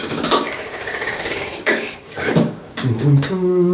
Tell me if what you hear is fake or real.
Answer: fake